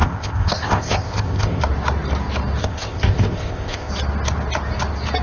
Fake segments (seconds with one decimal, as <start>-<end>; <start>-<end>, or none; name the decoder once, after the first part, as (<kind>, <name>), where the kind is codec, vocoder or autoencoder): 0.0-1.6 (codec, ZipCodec); 2.6-3.9